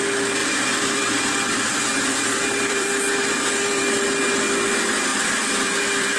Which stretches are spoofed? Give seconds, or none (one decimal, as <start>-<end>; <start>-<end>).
0.4-3.8; 5.1-6.2